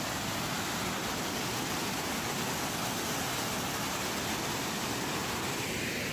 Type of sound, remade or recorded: recorded